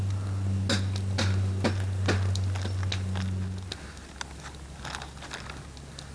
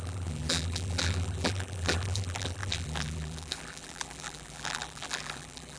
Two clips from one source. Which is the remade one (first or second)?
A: second